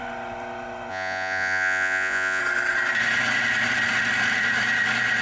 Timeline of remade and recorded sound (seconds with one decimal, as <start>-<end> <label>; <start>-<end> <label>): 0.0-0.9 recorded; 0.9-2.4 remade; 2.4-5.2 recorded